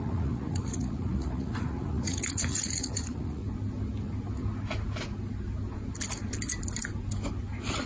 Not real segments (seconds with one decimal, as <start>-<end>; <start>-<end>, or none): 0.0-3.4

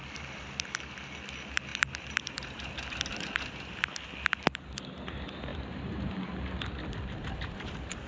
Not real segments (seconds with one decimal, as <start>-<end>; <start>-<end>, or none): 5.5-6.1